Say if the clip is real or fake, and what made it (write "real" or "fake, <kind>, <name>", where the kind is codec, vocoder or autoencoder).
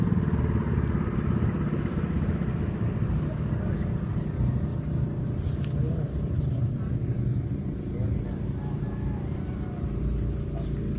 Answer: real